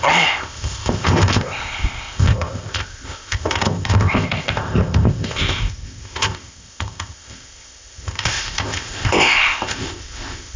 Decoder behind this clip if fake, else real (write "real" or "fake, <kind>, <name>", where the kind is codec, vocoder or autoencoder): fake, codec, ZipCodec